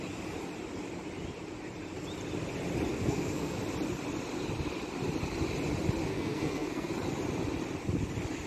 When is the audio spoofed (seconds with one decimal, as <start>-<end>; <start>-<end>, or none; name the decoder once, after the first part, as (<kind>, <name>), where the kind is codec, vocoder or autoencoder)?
2.9-3.6 (codec, SNAC); 6.1-6.9